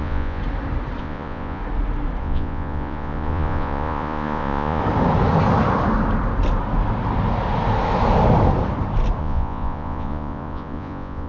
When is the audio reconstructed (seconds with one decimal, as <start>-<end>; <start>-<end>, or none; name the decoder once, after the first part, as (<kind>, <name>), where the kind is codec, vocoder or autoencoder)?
0.0-0.4 (vocoder, Vocos); 1.0-1.6; 2.2-4.8; 9.2-11.3